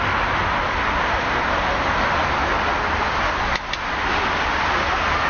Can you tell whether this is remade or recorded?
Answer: recorded